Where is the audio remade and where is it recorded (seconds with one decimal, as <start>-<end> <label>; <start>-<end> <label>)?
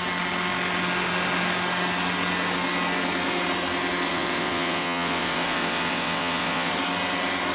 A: 0.0-4.1 recorded; 4.1-6.7 remade; 6.7-7.5 recorded